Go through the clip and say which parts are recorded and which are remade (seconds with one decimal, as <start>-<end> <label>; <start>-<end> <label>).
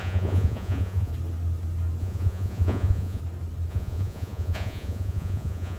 0.0-1.1 remade; 1.1-2.0 recorded; 2.0-3.2 remade; 3.2-3.7 recorded; 3.7-5.8 remade